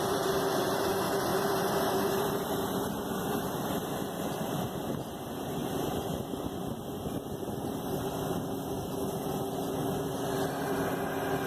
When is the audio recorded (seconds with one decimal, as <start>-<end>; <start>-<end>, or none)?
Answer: 0.0-11.5